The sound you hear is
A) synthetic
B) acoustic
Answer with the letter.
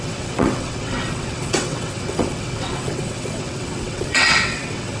A